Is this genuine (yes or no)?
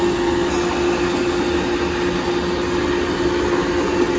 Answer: yes